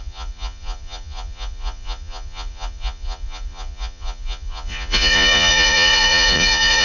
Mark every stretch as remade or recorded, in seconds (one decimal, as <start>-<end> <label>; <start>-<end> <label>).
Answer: 0.0-6.8 remade